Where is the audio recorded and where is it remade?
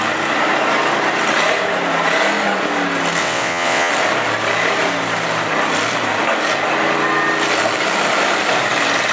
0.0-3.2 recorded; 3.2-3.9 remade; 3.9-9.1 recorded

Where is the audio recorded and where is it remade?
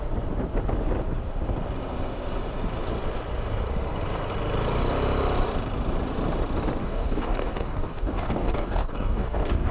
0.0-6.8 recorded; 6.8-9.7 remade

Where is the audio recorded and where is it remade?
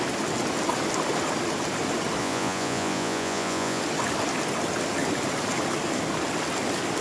0.0-2.2 recorded; 2.2-3.8 remade; 3.8-7.0 recorded